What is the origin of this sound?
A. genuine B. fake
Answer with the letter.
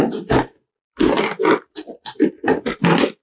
A